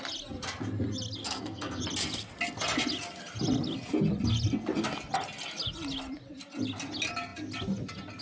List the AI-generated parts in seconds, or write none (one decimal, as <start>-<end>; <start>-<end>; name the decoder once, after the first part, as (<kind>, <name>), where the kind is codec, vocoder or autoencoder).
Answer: 1.2-1.8 (codec, SNAC)